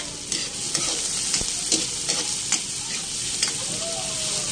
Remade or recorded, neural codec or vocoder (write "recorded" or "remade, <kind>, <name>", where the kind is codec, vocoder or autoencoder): recorded